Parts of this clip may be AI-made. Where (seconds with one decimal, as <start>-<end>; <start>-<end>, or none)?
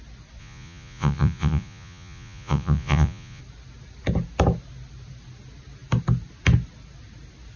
0.4-3.4